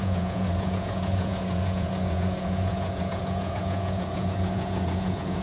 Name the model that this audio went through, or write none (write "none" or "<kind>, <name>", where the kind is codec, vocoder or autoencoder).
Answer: vocoder, Vocos